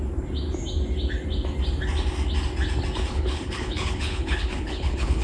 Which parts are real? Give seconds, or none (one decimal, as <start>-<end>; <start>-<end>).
0.0-3.1